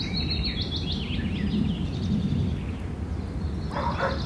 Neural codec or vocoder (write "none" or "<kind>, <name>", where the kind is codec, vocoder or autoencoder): none